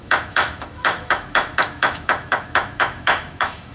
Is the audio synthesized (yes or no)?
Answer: yes